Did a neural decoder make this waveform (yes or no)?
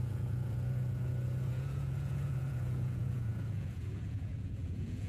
yes